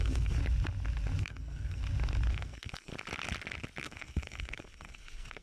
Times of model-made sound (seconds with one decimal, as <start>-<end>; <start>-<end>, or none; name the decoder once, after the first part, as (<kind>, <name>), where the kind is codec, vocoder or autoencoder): 0.0-0.4 (codec, SNAC); 1.2-1.8; 2.3-2.9; 3.8-5.4